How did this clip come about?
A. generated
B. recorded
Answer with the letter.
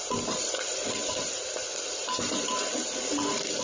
A